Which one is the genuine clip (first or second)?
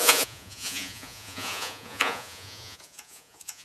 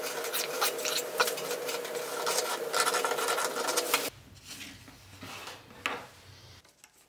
second